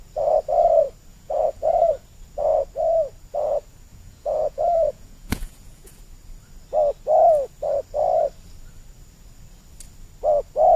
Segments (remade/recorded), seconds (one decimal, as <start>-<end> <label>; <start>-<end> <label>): 0.0-1.1 recorded; 1.1-2.0 remade; 2.0-3.9 recorded; 3.9-5.9 remade; 5.9-10.8 recorded